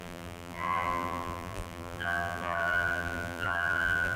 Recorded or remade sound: remade